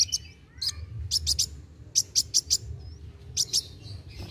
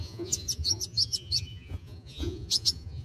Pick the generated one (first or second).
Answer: second